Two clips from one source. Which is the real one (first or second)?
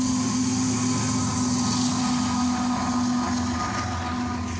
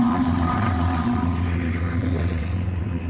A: first